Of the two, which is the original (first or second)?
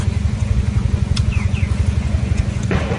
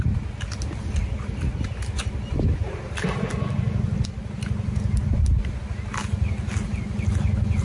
second